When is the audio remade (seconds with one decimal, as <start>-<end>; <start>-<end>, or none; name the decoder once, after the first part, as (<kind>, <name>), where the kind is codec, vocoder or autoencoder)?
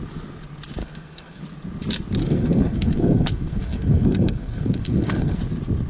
0.8-1.4 (codec, SNAC); 2.2-5.4